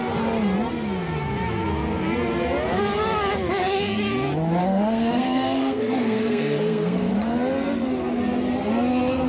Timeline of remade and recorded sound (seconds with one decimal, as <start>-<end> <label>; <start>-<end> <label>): 0.0-4.6 recorded; 4.6-7.1 remade; 7.1-9.3 recorded

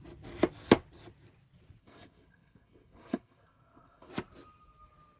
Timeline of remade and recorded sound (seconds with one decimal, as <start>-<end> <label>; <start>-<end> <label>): 0.0-1.8 recorded; 1.8-4.1 remade; 4.1-5.2 recorded

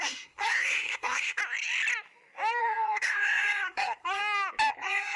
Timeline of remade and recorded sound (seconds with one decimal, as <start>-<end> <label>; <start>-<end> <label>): 0.0-1.4 remade; 1.4-2.6 recorded; 2.6-4.2 remade; 4.2-4.7 recorded; 4.7-5.2 remade

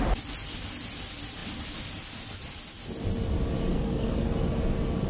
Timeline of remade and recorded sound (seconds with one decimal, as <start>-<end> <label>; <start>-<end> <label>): 0.0-3.7 recorded; 3.7-4.3 remade; 4.3-5.1 recorded